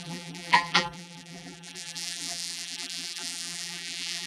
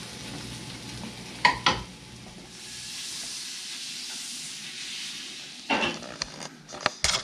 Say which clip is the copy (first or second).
first